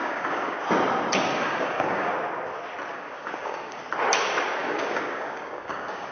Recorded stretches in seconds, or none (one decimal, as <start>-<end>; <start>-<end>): 0.6-1.3; 2.1-2.9; 3.8-4.6